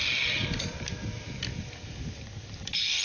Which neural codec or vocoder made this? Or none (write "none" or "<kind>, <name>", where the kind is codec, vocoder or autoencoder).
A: none